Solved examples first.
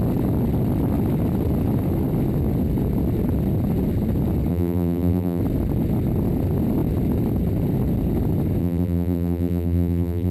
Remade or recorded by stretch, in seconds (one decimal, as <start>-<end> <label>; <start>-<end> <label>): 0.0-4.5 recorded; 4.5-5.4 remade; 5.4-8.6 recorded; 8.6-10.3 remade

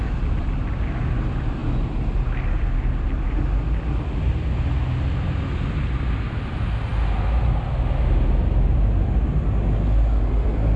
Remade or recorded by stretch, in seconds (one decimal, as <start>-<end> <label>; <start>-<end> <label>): 0.0-10.8 recorded

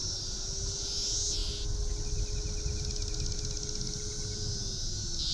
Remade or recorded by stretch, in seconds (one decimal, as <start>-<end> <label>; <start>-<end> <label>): 0.0-5.3 recorded